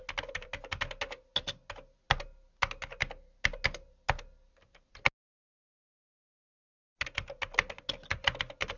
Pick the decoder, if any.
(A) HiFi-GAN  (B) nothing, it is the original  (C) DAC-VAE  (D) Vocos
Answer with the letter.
B